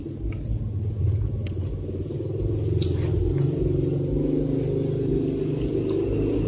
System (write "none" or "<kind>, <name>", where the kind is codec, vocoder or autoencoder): none